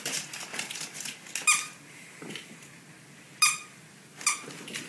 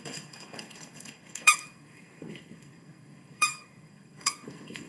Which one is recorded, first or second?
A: first